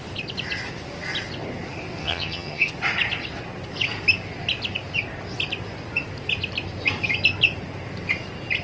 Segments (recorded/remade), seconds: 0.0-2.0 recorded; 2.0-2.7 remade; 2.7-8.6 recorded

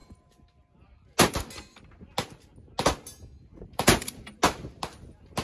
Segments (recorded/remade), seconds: 0.0-3.5 recorded; 3.5-4.4 remade; 4.4-5.4 recorded

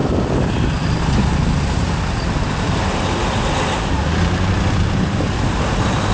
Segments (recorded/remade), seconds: 0.0-6.1 recorded

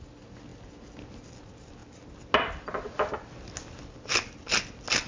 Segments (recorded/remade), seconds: 0.0-5.1 recorded